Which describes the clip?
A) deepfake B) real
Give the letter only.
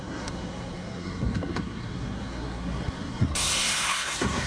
A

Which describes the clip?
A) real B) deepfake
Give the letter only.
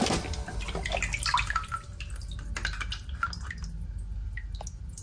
A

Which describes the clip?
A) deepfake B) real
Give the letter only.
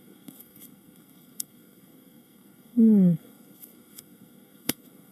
A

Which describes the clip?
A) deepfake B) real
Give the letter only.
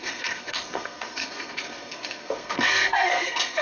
A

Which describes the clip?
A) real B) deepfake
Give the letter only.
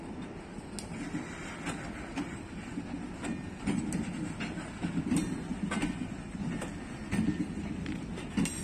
A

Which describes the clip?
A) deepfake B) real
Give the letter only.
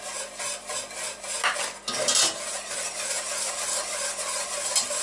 B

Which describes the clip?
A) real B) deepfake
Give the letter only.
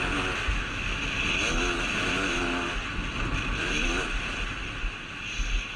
A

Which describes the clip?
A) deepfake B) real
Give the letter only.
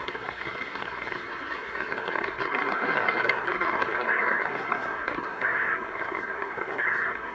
A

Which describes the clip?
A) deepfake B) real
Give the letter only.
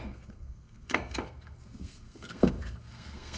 A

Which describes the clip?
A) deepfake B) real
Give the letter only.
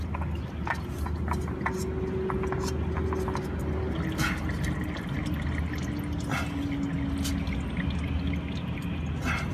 B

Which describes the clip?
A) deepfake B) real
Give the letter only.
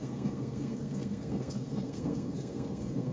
A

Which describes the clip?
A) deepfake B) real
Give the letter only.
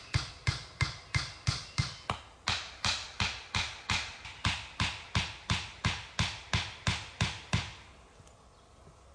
B